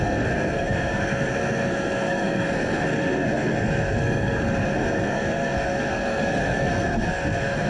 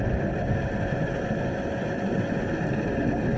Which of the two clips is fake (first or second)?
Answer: first